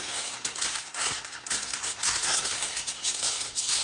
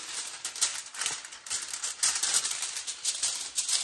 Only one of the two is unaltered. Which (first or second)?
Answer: second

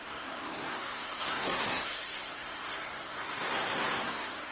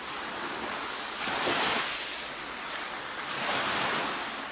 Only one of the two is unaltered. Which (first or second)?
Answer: second